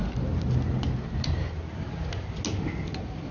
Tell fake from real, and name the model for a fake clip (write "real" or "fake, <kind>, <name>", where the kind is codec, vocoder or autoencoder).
real